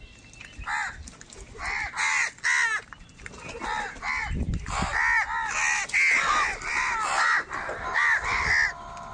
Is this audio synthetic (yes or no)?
no